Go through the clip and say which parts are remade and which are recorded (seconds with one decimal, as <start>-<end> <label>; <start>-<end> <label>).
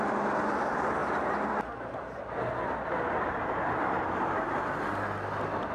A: 0.0-5.7 recorded